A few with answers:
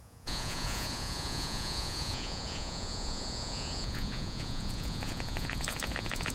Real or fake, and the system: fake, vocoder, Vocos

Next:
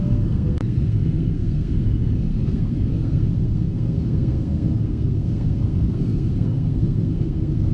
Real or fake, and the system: fake, codec, SNAC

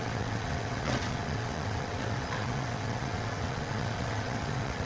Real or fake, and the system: fake, vocoder, WaveNeXt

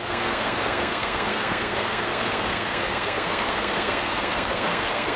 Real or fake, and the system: fake, codec, SNAC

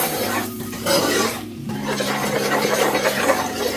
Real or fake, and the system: fake, vocoder, BigVGAN v2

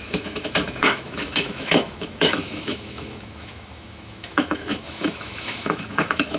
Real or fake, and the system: fake, autoencoder, DAC-VAE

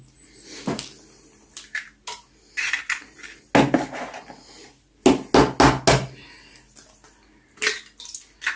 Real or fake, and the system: real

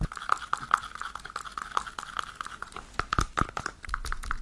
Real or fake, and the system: real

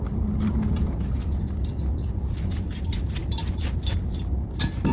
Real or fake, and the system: real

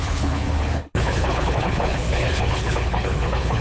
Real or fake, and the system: fake, codec, HILCodec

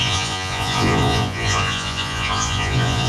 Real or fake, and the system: fake, vocoder, Vocos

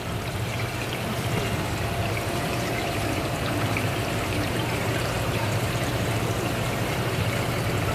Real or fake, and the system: fake, vocoder, BigVGAN v2